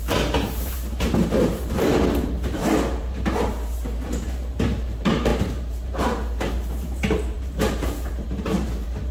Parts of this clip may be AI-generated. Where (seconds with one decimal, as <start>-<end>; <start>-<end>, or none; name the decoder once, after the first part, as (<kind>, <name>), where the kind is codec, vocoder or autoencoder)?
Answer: 0.0-9.1 (vocoder, BigVGAN v2)